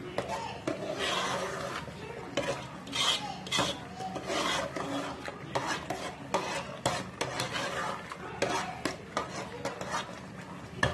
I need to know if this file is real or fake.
real